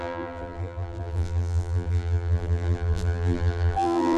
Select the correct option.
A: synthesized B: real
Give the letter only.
A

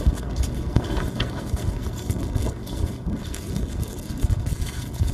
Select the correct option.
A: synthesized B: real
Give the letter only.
A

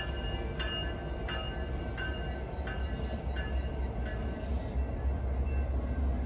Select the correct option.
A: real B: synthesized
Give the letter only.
A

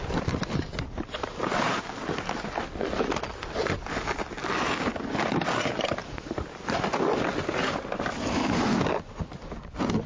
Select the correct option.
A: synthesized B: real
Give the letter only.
B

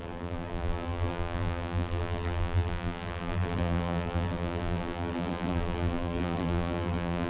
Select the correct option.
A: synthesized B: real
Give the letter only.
A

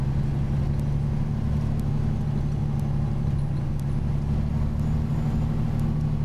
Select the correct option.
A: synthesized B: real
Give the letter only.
B